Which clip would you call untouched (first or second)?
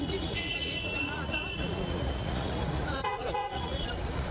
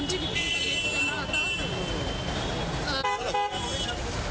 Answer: second